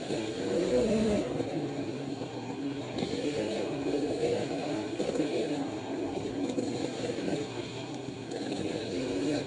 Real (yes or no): no